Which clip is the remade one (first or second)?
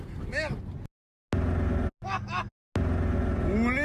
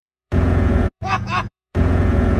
second